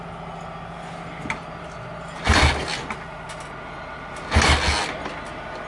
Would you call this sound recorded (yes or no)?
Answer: yes